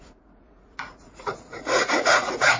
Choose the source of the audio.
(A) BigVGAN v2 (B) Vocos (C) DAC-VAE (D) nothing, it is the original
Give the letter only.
B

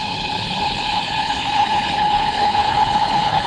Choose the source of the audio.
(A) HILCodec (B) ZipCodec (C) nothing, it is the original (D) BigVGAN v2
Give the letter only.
A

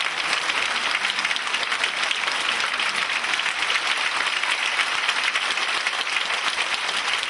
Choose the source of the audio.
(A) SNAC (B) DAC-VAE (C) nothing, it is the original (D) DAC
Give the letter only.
C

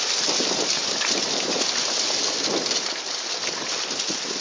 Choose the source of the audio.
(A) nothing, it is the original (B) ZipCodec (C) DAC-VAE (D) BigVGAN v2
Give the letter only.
A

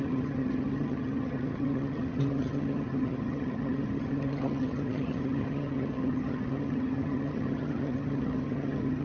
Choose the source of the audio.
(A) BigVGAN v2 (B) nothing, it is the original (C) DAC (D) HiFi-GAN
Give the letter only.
D